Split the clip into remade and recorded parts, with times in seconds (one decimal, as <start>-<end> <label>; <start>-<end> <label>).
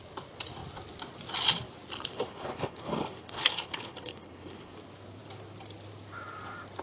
0.0-2.1 recorded; 2.1-4.7 remade; 4.7-6.8 recorded